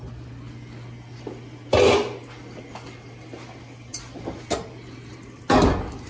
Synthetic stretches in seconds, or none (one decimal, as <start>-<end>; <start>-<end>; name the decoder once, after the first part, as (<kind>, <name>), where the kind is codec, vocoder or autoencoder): none

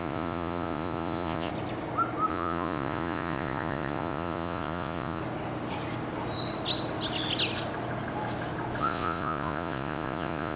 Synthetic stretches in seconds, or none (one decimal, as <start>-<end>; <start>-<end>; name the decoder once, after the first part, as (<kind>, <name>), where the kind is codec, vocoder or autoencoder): 0.0-1.5 (vocoder, Vocos); 2.3-5.2; 8.8-10.6

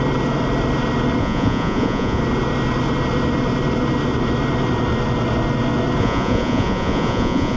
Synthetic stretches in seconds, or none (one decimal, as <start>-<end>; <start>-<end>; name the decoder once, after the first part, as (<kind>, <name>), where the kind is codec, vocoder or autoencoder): 1.2-2.2 (vocoder, Vocos); 6.0-7.6

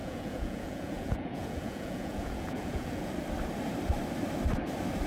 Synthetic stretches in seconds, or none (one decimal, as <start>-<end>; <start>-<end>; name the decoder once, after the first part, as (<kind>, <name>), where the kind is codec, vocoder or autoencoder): 0.0-3.1 (vocoder, Vocos)